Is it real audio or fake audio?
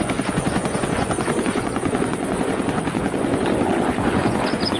fake